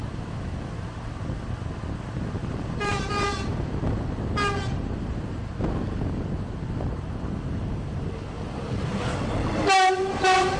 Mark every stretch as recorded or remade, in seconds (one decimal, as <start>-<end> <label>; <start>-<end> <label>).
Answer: 0.0-2.4 recorded; 2.4-4.0 remade; 4.0-10.6 recorded